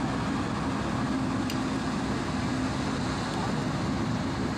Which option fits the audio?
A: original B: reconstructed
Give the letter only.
A